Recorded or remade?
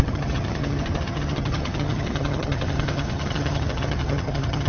remade